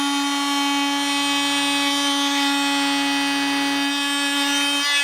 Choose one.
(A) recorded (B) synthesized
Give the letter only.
A